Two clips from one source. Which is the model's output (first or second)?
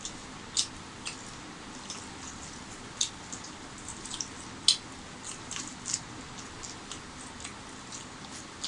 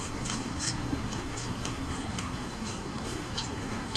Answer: second